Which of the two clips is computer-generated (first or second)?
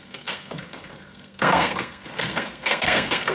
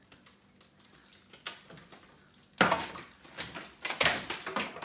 first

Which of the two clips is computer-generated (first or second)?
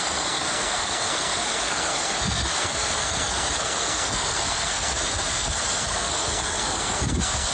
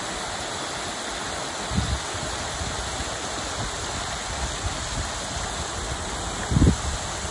first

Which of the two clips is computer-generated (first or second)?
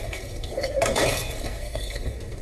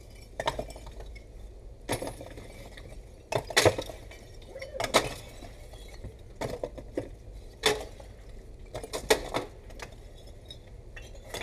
first